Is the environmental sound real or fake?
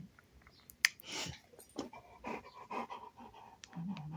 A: real